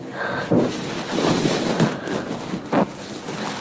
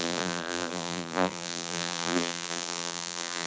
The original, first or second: first